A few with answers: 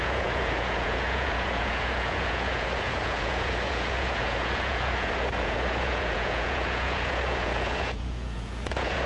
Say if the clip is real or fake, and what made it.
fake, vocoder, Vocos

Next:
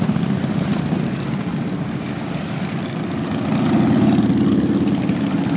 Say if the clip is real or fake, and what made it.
fake, vocoder, BigVGAN v2